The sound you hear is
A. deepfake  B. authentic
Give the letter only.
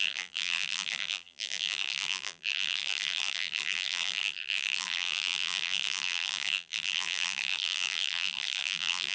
A